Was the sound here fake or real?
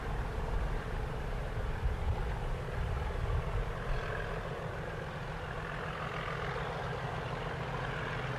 real